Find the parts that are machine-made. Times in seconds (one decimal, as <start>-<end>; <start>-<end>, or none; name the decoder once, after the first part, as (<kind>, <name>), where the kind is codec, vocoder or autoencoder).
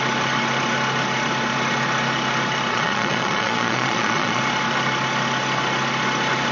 2.7-4.4 (vocoder, Vocos)